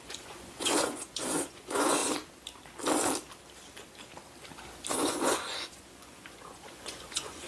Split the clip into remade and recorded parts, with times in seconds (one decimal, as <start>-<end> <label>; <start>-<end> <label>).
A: 0.0-2.0 remade; 2.0-4.9 recorded; 4.9-7.5 remade

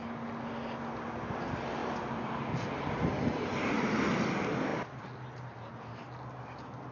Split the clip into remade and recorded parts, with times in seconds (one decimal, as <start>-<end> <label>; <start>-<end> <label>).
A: 0.0-1.8 recorded; 1.8-4.3 remade; 4.3-6.9 recorded

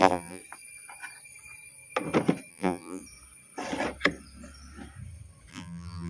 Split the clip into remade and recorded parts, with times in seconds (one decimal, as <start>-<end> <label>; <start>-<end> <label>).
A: 0.0-0.4 remade; 0.4-2.5 recorded; 2.5-3.0 remade; 3.0-5.5 recorded; 5.5-6.1 remade

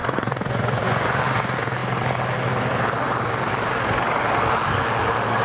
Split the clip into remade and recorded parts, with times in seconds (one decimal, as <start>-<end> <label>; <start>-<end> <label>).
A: 0.0-1.2 remade; 1.2-5.4 recorded

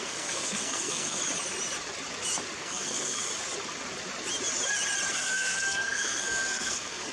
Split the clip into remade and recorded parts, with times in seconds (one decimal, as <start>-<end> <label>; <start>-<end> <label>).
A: 0.0-1.2 remade; 1.2-2.6 recorded; 2.6-3.3 remade; 3.3-5.1 recorded; 5.1-7.1 remade

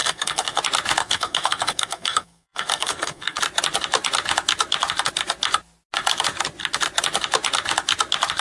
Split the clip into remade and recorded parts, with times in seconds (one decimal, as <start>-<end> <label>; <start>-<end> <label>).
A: 0.0-0.6 remade; 0.6-1.0 recorded; 1.0-3.4 remade; 3.4-8.4 recorded